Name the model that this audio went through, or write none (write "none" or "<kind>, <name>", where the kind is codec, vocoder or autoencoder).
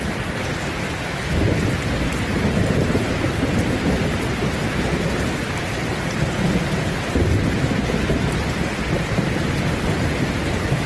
none